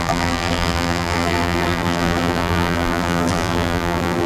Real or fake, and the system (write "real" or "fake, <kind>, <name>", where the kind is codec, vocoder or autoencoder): fake, vocoder, BigVGAN v2